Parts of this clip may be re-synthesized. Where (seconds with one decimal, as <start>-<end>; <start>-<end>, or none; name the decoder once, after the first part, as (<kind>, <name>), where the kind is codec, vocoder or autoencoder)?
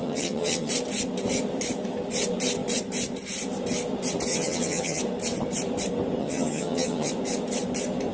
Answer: 0.0-0.7 (vocoder, HiFi-GAN); 4.3-5.0; 6.2-7.1